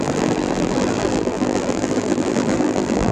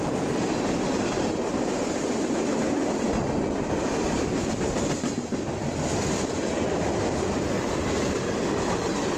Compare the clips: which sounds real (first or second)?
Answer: second